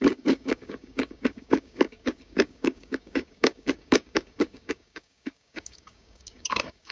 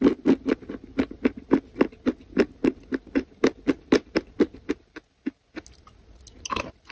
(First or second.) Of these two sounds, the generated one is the first